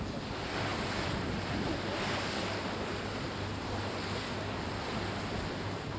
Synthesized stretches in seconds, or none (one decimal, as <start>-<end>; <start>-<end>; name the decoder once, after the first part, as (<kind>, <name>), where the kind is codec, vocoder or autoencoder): none